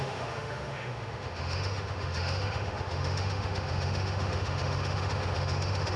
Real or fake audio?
fake